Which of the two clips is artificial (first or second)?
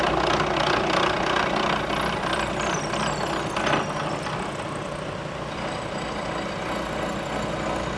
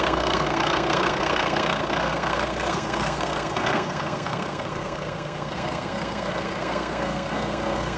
second